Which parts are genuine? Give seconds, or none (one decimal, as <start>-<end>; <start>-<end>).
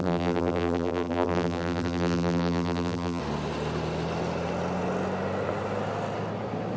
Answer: 3.2-6.8